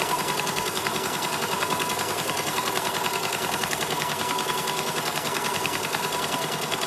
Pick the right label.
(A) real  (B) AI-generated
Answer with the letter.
B